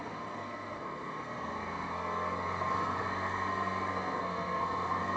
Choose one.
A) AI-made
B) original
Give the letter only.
A